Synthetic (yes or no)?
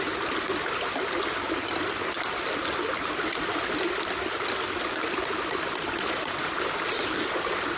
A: no